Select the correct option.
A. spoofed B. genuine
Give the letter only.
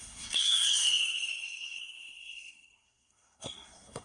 A